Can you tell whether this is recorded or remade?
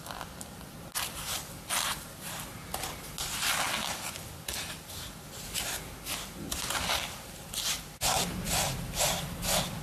recorded